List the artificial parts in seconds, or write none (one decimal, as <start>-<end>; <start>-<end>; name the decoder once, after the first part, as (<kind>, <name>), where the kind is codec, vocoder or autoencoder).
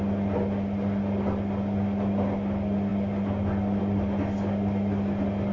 none